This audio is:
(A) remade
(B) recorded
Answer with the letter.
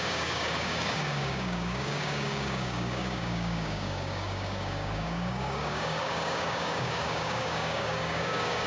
A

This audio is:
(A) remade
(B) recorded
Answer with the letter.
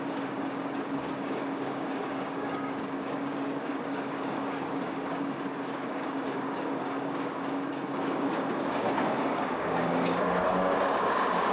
A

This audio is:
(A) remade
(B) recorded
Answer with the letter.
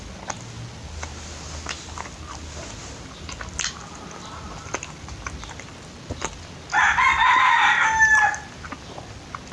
B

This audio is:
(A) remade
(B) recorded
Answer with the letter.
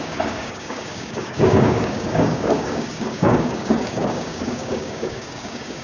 A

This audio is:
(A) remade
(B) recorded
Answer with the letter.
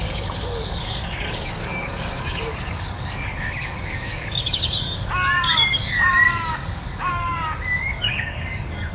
A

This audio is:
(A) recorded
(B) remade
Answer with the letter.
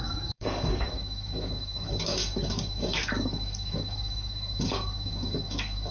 B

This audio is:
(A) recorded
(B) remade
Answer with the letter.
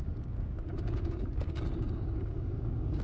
B